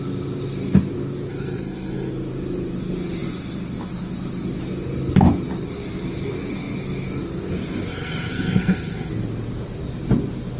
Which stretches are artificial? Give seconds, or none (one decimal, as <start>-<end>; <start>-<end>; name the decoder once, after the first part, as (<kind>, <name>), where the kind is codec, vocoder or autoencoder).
1.3-2.1 (codec, SNAC); 7.9-9.1